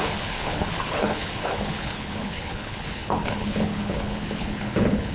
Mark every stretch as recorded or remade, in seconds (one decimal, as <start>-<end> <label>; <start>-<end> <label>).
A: 0.0-5.1 remade